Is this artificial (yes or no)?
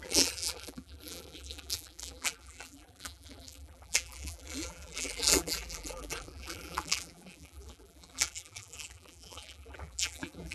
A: yes